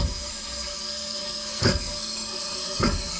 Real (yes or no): no